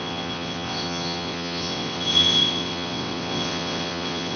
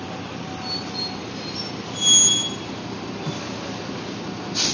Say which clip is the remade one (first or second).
first